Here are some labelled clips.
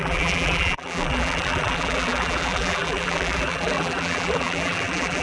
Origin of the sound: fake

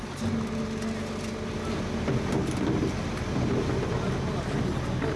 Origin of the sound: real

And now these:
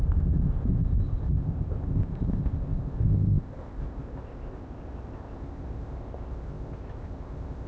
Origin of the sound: fake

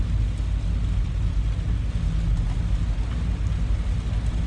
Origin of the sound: real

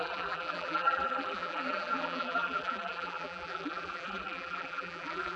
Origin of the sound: fake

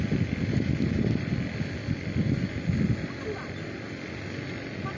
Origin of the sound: real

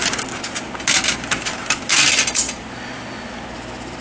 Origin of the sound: real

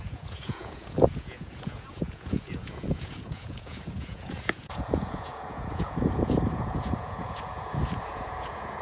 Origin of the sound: fake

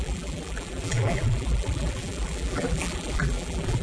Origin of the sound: fake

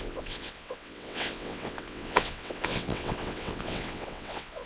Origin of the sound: fake